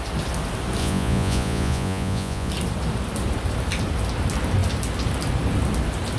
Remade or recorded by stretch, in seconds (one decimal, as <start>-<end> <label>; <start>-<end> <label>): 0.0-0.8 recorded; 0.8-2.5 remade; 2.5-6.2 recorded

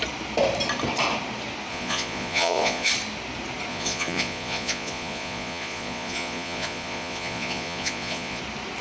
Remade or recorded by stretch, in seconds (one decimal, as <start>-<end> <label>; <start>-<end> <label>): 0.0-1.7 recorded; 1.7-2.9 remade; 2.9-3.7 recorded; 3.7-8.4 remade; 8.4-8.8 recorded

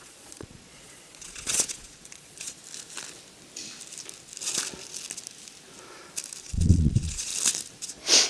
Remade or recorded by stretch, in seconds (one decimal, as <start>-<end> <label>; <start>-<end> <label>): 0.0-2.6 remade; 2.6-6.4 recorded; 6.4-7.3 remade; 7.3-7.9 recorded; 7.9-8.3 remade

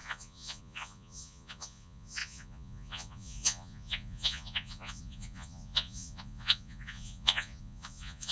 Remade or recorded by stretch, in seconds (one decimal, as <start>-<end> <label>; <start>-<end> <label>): 0.0-8.3 remade

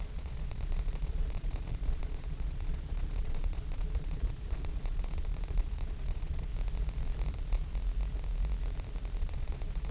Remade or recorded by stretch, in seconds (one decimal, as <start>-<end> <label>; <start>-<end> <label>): 0.0-6.5 remade; 6.5-7.3 recorded; 7.3-7.7 remade; 7.7-9.2 recorded; 9.2-9.9 remade